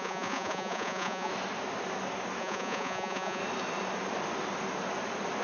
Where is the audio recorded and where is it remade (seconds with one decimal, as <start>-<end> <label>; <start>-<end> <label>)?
0.0-1.3 remade; 1.3-2.4 recorded; 2.4-3.4 remade; 3.4-5.4 recorded